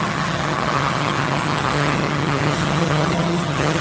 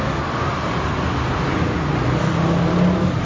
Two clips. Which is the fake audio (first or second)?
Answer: first